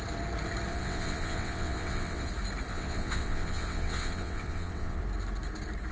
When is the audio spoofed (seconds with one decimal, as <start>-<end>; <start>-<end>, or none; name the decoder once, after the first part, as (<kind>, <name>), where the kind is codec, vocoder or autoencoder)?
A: 0.7-2.3 (vocoder, WaveNeXt); 2.7-5.0

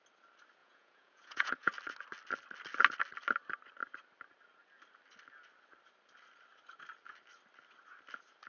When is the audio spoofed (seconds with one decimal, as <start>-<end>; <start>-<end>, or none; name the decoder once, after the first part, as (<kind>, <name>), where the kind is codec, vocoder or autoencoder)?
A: 0.6-1.7 (vocoder, Vocos)